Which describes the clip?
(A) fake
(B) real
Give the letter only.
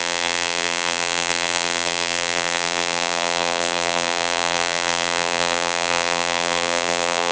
A